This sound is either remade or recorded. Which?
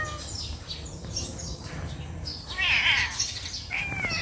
recorded